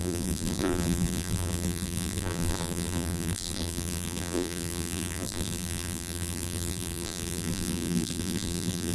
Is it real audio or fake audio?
fake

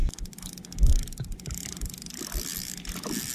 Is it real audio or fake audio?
real